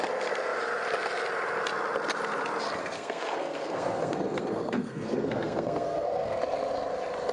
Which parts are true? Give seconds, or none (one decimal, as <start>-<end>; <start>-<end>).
0.0-2.8; 6.4-7.3